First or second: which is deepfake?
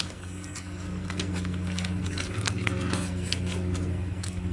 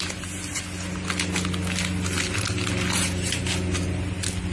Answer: first